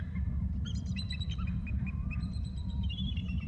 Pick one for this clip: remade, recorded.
remade